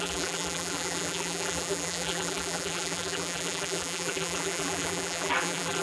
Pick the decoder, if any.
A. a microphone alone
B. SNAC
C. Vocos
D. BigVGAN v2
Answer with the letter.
D